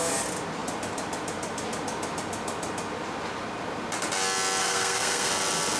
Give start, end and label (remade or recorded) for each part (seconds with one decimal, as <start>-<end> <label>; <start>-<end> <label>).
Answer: 0.0-4.6 recorded; 4.6-5.3 remade; 5.3-5.8 recorded